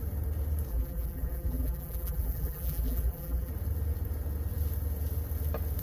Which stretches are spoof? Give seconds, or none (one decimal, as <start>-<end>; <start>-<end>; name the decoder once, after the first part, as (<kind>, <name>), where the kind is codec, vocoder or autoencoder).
0.7-3.5 (vocoder, BigVGAN v2)

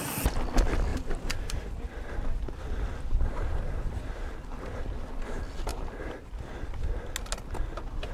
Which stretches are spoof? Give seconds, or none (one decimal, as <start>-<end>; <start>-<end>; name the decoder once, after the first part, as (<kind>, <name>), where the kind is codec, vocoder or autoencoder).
0.9-4.6 (vocoder, BigVGAN v2)

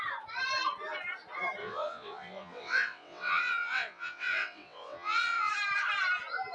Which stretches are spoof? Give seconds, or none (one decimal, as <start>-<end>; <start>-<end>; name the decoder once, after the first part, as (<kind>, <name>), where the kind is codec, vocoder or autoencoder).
1.6-5.5 (vocoder, WaveNeXt)